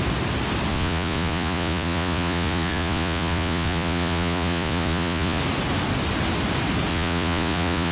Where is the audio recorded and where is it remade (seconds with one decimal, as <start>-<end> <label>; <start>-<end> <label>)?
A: 0.0-0.7 recorded; 0.7-5.4 remade; 5.4-6.9 recorded; 6.9-7.9 remade